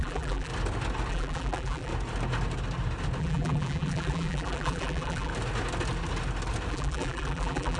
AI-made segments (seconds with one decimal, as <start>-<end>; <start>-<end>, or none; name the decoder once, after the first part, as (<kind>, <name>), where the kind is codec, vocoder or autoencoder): 0.0-0.5 (vocoder, BigVGAN v2); 1.1-1.9; 3.2-5.3; 6.7-7.8